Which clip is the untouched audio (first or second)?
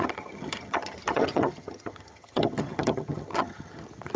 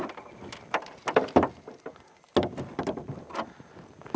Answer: second